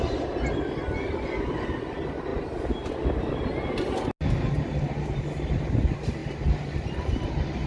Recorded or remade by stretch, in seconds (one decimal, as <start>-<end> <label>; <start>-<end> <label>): 0.0-7.7 recorded